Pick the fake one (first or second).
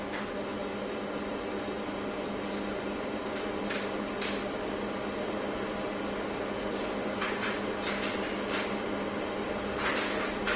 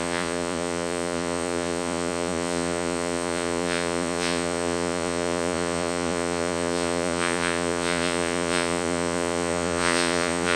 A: second